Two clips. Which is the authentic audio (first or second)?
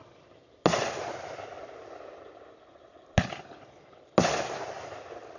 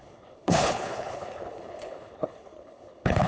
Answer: first